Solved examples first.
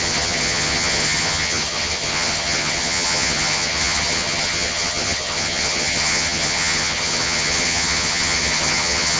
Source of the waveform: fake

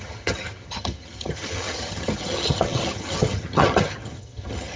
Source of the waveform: fake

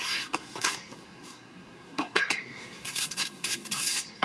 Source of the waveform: fake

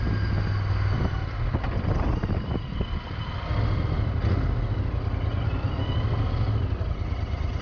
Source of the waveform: real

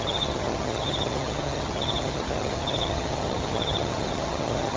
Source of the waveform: fake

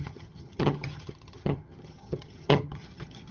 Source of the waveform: fake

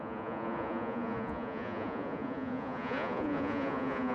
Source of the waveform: fake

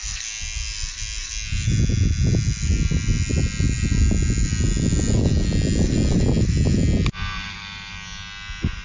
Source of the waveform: real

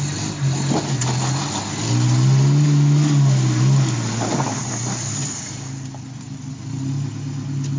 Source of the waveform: real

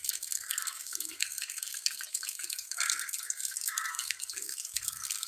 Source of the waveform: fake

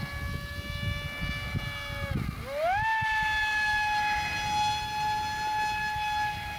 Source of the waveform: real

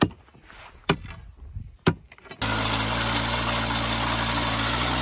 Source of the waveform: real